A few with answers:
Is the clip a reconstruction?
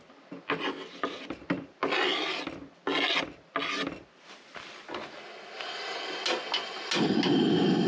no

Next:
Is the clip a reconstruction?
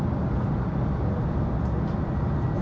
no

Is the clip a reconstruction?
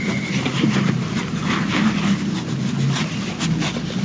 no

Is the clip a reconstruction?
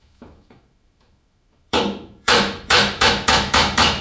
yes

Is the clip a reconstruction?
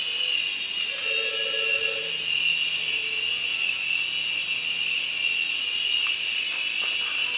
no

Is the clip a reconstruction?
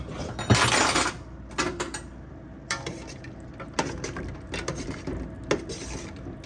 no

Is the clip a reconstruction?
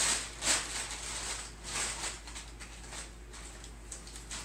no